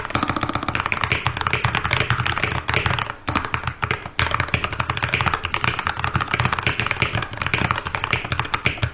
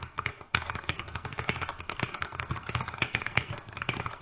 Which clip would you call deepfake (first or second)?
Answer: second